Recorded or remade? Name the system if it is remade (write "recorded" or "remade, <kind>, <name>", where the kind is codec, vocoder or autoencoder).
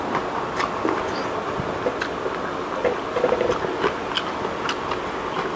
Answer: recorded